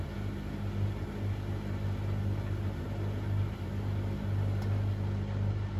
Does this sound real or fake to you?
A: real